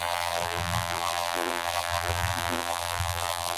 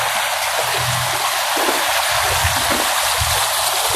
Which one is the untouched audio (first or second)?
second